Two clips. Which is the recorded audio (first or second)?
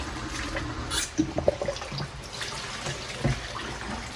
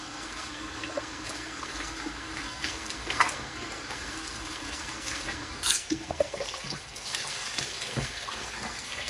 first